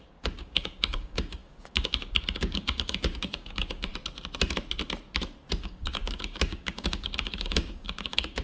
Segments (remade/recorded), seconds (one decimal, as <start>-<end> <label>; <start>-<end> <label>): 0.0-3.9 remade; 3.9-5.6 recorded; 5.6-8.4 remade